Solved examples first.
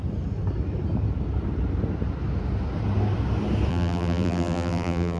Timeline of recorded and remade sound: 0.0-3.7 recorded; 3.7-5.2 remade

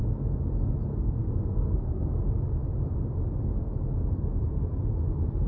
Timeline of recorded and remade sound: 0.0-0.9 recorded; 0.9-2.2 remade; 2.2-5.5 recorded